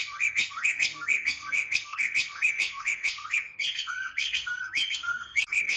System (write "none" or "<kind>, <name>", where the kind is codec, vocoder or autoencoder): codec, SNAC